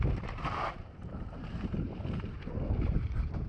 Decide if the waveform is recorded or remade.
remade